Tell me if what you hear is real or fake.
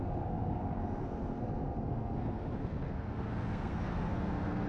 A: fake